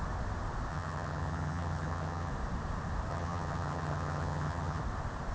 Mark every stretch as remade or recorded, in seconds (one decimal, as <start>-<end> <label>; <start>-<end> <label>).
0.0-0.7 recorded; 0.7-2.3 remade; 2.3-3.1 recorded; 3.1-4.8 remade; 4.8-5.3 recorded